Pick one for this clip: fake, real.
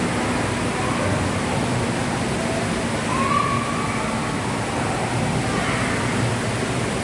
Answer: real